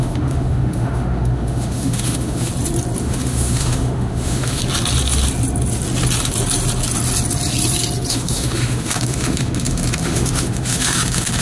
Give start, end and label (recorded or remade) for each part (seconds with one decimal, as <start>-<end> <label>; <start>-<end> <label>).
0.0-2.5 remade; 2.5-3.0 recorded; 3.0-4.6 remade; 4.6-8.1 recorded; 8.1-11.4 remade